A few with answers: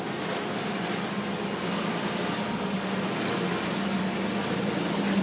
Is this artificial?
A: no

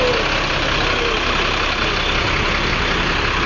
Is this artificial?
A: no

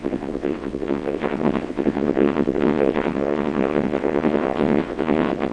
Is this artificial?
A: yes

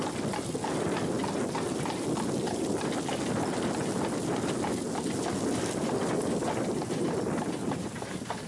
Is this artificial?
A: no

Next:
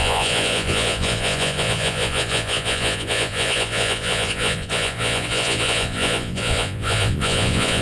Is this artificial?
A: yes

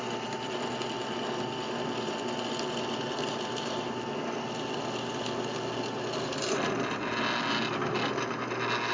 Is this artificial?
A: no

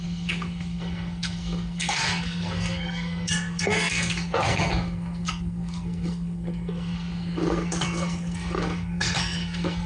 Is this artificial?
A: yes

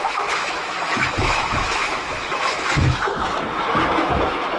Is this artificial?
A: yes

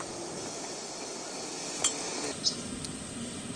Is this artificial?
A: no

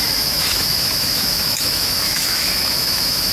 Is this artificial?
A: yes